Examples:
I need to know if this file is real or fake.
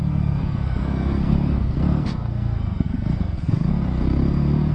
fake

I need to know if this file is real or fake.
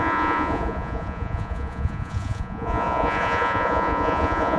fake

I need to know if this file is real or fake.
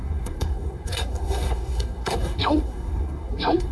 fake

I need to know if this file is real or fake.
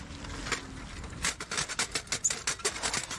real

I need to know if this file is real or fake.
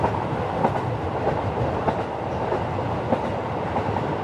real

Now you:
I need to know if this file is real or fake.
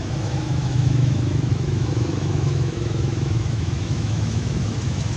fake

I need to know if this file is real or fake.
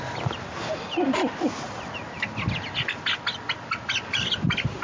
real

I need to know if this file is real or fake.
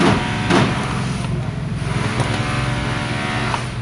real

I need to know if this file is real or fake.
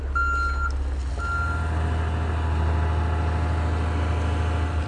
real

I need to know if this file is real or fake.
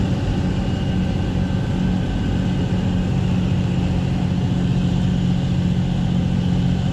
real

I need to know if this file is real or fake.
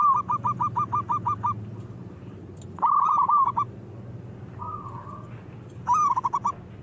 real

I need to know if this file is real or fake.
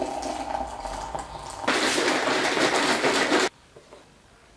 real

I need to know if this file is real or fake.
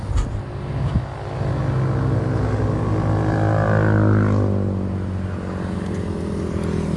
real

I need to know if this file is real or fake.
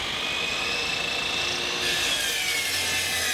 real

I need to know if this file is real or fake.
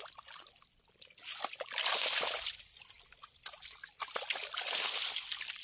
real